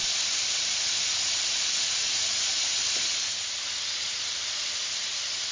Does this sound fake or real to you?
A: real